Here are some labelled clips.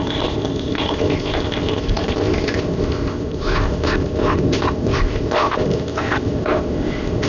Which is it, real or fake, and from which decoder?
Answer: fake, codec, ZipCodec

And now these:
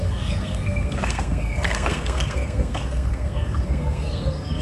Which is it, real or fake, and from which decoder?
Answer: fake, codec, SNAC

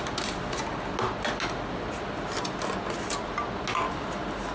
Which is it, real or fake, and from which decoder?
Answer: real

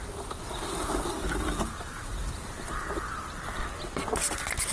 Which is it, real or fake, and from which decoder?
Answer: real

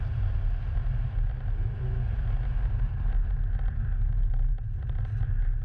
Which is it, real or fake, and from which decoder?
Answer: real